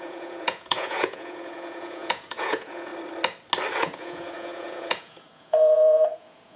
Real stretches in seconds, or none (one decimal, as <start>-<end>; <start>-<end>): 2.9-3.8